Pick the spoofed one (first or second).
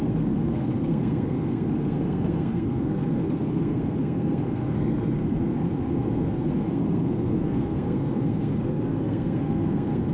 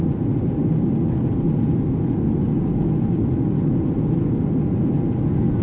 first